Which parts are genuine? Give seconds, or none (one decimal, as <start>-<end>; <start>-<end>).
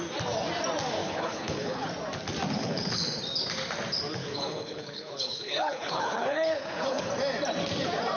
0.0-1.0; 1.9-2.6; 3.2-4.2; 7.1-8.2